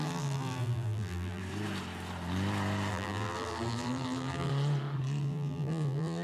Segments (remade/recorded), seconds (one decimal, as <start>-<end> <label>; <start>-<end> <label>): 0.0-1.4 remade; 1.4-2.9 recorded; 2.9-4.5 remade; 4.5-5.2 recorded; 5.2-6.2 remade